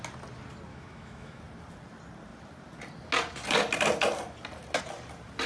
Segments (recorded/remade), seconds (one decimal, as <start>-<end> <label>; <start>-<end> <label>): 0.0-0.7 recorded; 0.7-1.4 remade; 1.4-5.5 recorded